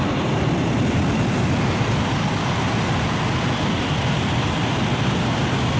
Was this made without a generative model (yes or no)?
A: yes